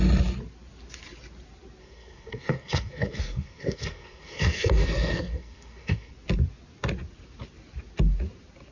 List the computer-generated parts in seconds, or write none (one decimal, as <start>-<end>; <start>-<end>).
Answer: 1.8-6.1